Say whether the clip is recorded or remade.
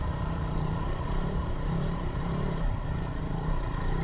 remade